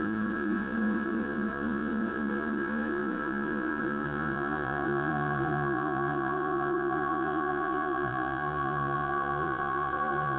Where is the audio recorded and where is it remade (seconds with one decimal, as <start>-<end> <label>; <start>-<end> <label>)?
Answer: 0.0-10.4 remade

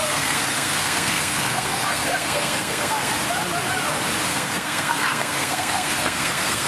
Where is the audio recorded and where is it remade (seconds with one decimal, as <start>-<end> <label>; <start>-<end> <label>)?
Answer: 0.0-3.1 remade; 3.1-4.3 recorded; 4.3-6.7 remade

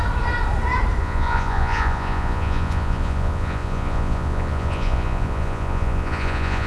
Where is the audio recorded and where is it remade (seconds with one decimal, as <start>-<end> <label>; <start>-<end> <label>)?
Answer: 0.0-1.0 recorded; 1.0-6.7 remade

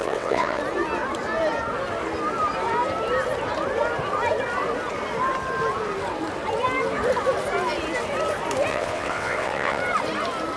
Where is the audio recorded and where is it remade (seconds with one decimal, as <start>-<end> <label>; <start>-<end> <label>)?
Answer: 0.0-0.6 remade; 0.6-8.7 recorded; 8.7-9.8 remade; 9.8-10.6 recorded

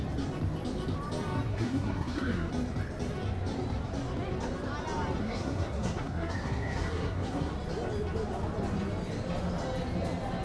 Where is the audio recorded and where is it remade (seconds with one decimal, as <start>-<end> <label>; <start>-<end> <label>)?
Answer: 0.0-1.5 recorded; 1.5-2.5 remade; 2.5-5.2 recorded; 5.2-7.5 remade; 7.5-10.4 recorded

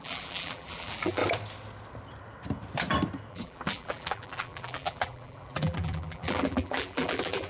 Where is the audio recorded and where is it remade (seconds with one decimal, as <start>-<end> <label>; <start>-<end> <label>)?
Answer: 0.0-1.2 remade; 1.2-3.3 recorded; 3.3-7.5 remade

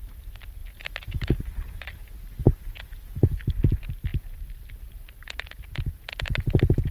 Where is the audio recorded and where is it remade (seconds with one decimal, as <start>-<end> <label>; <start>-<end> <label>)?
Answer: 0.0-6.9 recorded